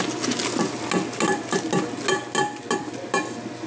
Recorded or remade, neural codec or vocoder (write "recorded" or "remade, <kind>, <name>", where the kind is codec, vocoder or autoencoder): recorded